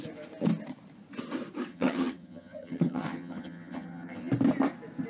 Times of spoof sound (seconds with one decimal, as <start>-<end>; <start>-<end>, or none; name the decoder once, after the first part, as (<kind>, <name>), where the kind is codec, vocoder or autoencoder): 1.7-4.3 (vocoder, HiFi-GAN)